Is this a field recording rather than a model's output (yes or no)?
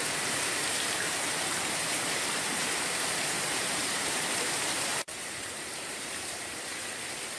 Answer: no